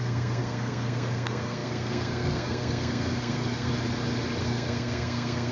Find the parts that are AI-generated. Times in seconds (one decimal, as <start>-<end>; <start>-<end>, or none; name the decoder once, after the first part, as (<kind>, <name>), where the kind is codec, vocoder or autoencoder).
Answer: 0.0-3.7 (codec, SNAC); 4.4-5.5